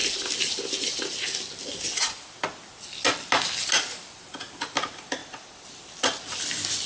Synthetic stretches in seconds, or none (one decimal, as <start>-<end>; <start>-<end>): 0.0-1.6; 5.2-6.4